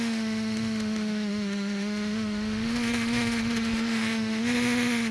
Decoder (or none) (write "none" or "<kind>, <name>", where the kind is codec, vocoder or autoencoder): autoencoder, DAC-VAE